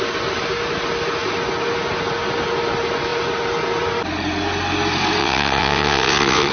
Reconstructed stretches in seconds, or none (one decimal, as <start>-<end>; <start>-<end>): 5.2-6.5

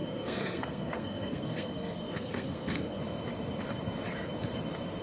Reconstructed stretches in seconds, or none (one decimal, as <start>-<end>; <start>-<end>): 0.0-3.0

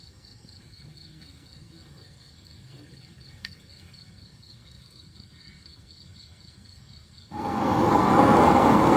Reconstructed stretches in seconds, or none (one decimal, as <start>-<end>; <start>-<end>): 0.0-9.0

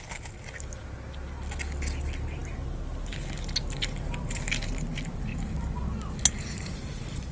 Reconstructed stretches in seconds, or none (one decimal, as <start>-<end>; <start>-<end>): none

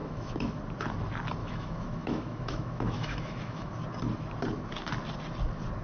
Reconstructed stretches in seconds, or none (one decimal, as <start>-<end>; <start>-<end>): 0.0-0.6; 1.4-3.7

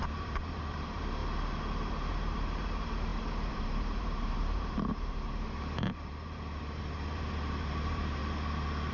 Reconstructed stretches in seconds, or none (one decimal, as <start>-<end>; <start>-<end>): 0.0-1.2; 2.1-8.2